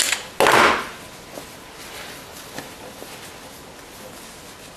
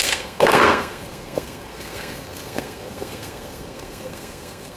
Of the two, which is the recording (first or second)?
first